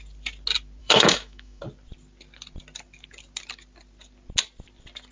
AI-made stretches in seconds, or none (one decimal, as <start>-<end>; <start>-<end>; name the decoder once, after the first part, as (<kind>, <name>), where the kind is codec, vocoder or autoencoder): 0.8-1.6 (autoencoder, DAC-VAE)